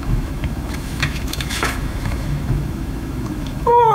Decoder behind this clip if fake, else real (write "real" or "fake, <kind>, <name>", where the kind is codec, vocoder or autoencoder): fake, autoencoder, DAC-VAE